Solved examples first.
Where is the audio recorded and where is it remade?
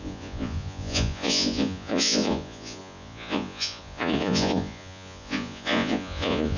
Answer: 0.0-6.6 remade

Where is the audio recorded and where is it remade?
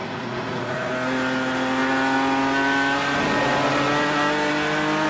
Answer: 0.0-0.9 remade; 0.9-5.1 recorded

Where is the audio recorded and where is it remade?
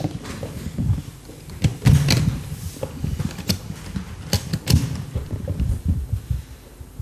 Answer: 0.0-7.0 recorded